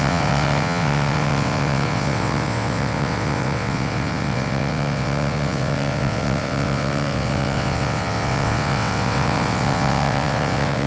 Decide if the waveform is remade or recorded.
remade